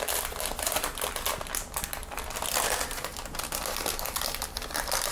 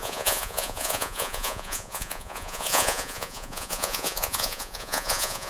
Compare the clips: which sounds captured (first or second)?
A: first